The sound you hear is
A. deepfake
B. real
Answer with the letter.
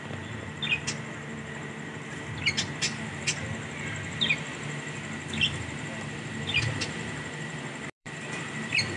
A